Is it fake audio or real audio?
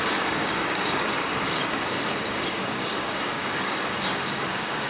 fake